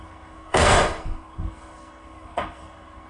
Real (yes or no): no